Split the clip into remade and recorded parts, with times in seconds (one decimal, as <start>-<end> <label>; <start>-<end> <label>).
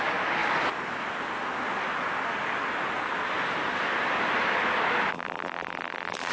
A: 0.0-5.1 recorded; 5.1-6.3 remade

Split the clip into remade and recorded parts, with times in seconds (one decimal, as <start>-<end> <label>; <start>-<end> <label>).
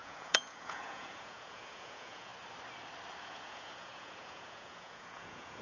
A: 0.0-2.3 remade; 2.3-3.2 recorded; 3.2-5.6 remade